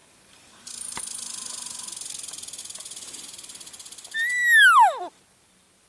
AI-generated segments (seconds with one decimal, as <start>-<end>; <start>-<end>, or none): none